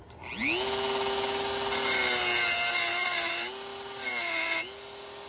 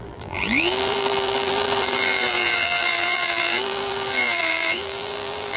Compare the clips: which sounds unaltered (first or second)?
first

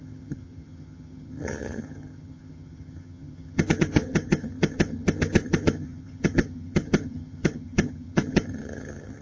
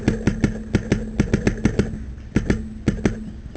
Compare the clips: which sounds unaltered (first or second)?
second